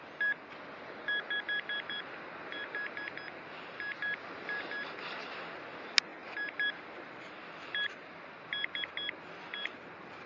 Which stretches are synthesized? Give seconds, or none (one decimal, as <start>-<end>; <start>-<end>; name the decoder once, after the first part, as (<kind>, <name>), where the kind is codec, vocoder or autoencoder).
none